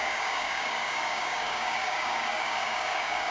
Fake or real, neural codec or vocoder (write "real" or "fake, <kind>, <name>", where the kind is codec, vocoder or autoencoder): fake, codec, DAC